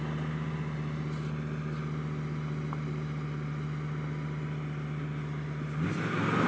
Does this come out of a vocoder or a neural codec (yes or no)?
no